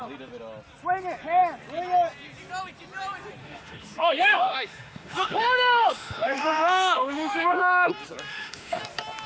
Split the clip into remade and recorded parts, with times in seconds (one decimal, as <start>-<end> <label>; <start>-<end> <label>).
0.0-3.4 recorded; 3.4-7.9 remade; 7.9-8.3 recorded; 8.3-8.8 remade; 8.8-9.3 recorded

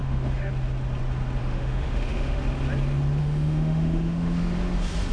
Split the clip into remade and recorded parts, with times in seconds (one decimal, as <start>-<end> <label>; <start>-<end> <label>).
0.0-0.5 remade; 0.5-1.4 recorded; 1.4-2.4 remade; 2.4-3.2 recorded; 3.2-4.5 remade; 4.5-5.1 recorded

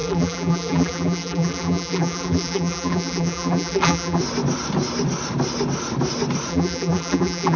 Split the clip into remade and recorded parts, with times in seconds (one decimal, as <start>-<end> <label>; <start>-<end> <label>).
0.0-4.2 remade; 4.2-6.5 recorded; 6.5-7.6 remade